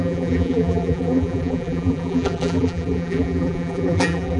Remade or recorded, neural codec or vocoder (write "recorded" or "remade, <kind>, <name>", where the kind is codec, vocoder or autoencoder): remade, vocoder, BigVGAN v2